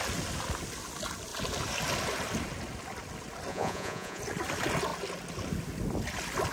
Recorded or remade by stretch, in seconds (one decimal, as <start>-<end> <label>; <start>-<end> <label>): 0.0-3.5 recorded; 3.5-4.2 remade; 4.2-6.5 recorded